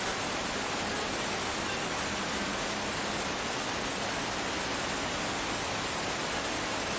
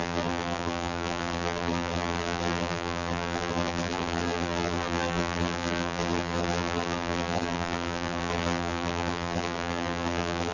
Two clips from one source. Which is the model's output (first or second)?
second